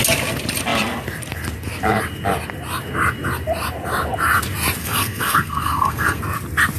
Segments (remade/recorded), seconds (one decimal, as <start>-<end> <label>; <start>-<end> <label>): 0.0-4.8 recorded; 4.8-6.2 remade; 6.2-6.8 recorded